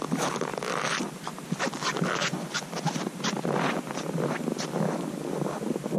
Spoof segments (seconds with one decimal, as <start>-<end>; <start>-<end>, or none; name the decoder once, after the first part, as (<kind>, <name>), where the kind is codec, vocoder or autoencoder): 0.5-1.5 (vocoder, BigVGAN v2); 2.2-5.1